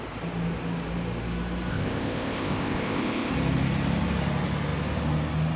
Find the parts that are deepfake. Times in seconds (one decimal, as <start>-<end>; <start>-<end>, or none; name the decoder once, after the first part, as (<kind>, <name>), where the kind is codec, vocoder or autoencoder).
1.7-3.3 (codec, ZipCodec)